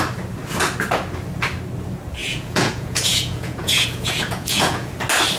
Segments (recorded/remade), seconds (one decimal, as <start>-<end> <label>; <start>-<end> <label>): 0.0-2.2 recorded; 2.2-4.9 remade; 4.9-5.4 recorded